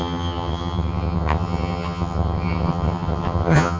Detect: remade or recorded remade